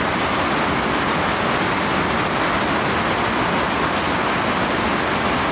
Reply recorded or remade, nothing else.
recorded